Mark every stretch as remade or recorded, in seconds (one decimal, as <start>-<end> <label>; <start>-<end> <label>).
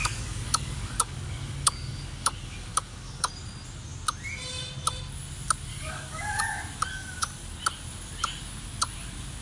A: 0.0-3.3 remade; 3.3-5.7 recorded; 5.7-6.6 remade; 6.6-9.4 recorded